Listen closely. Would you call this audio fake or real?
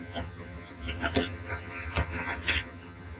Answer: fake